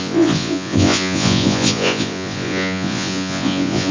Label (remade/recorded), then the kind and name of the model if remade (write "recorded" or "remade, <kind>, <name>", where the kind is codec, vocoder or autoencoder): remade, vocoder, Vocos